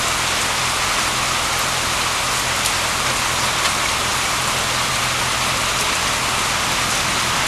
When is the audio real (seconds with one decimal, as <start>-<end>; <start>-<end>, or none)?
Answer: 0.0-7.5